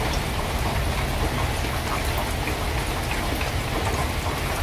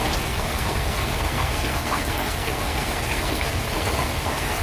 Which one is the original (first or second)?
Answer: first